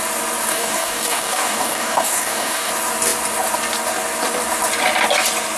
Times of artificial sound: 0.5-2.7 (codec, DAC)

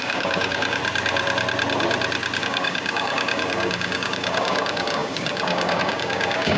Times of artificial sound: 0.0-0.8 (codec, DAC); 2.4-6.6

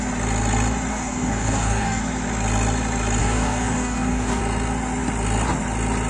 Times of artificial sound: 0.9-2.0 (codec, DAC); 3.2-4.4

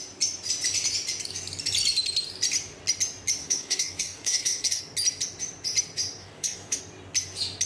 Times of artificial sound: 3.4-4.8 (codec, DAC); 6.2-6.8

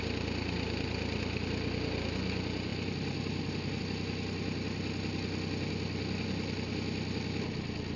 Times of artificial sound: none

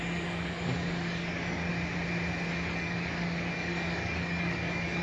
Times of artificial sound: 0.0-1.7 (codec, DAC); 2.5-5.0

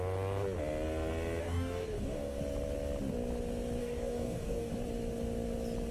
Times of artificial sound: 1.4-2.4 (codec, DAC); 3.8-4.7